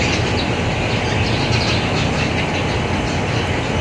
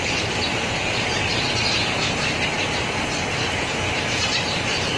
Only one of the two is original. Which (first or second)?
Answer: first